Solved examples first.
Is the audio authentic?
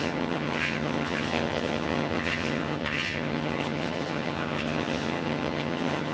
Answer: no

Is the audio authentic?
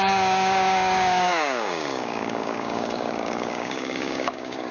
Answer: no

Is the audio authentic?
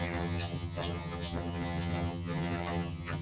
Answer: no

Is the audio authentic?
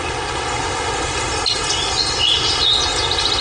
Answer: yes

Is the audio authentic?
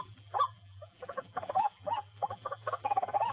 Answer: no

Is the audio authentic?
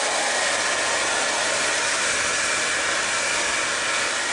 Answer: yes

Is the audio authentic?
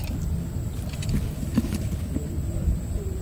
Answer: yes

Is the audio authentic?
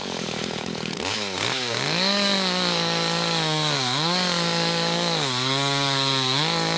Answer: no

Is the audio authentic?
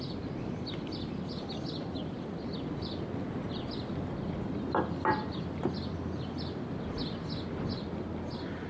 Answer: yes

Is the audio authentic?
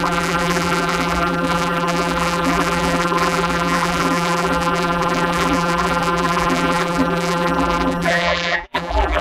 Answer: no